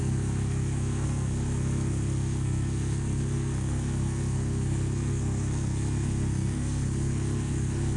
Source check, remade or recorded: remade